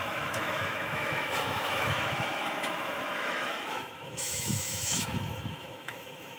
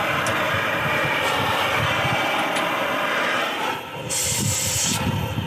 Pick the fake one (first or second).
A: first